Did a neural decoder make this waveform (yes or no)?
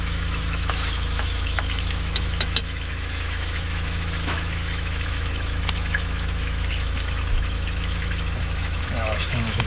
yes